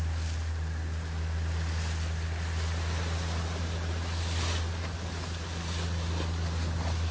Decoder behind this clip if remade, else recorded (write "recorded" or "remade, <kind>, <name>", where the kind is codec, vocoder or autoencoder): recorded